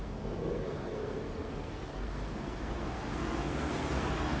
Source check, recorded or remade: remade